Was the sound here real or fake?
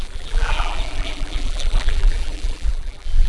fake